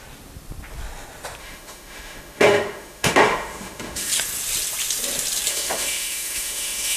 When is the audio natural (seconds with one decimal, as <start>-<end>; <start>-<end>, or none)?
0.0-1.4; 4.1-5.5